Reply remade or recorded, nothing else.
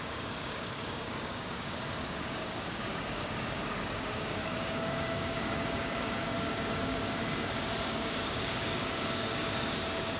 remade